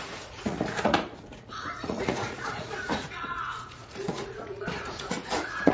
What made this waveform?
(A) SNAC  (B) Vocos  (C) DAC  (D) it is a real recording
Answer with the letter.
B